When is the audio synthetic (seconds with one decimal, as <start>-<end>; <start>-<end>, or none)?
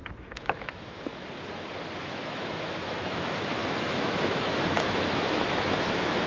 0.0-1.1; 2.0-6.3